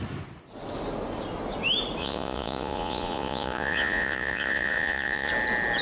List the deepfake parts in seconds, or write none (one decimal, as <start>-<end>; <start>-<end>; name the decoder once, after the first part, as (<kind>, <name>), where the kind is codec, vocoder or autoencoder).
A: 2.0-5.3 (vocoder, Vocos)